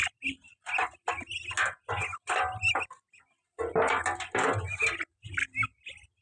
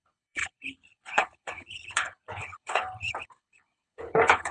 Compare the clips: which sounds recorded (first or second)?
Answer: first